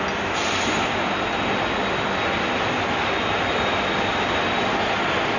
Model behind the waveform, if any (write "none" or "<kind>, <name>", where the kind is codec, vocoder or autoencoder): none